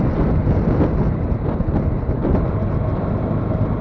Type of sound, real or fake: real